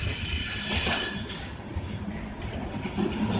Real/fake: real